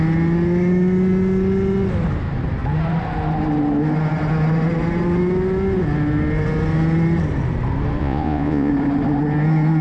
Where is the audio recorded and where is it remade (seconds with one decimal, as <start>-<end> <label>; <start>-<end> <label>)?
0.0-8.0 recorded; 8.0-8.7 remade; 8.7-9.8 recorded